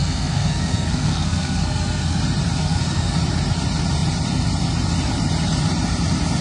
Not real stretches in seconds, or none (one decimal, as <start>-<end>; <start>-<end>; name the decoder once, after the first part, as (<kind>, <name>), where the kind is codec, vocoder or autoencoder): 0.0-2.2 (codec, SNAC); 2.6-3.2